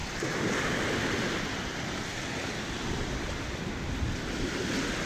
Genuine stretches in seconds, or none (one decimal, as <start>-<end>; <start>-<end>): 0.0-5.1